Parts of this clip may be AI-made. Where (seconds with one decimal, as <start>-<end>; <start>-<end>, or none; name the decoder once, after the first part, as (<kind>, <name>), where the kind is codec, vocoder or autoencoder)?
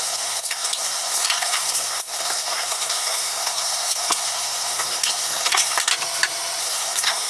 0.0-5.9 (codec, SNAC); 6.6-7.3